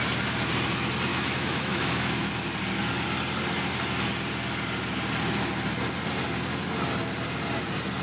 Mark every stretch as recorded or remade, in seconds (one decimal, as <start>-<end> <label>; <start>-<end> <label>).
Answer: 0.0-1.1 recorded; 1.1-2.3 remade; 2.3-8.0 recorded